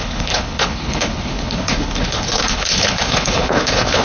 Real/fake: fake